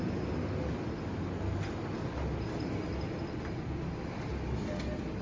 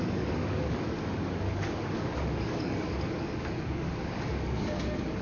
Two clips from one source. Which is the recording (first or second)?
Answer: first